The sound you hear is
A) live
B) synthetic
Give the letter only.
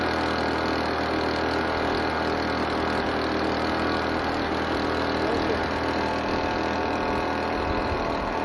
A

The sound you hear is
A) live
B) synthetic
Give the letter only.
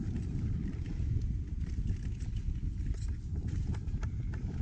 B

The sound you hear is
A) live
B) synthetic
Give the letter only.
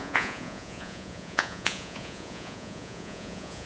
B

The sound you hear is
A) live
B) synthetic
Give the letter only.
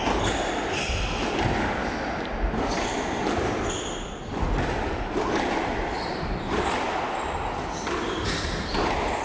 A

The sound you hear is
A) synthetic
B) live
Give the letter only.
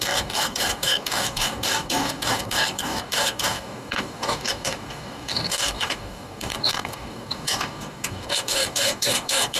A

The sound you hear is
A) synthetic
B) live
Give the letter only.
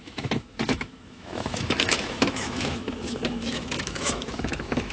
A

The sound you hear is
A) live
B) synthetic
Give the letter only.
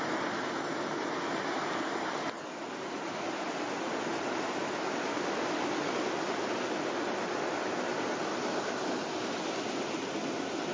A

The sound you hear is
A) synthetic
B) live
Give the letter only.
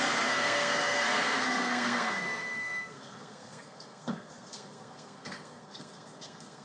A